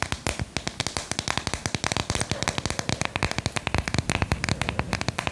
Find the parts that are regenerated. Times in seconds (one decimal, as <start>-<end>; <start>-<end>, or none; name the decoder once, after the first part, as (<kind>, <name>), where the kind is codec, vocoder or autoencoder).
none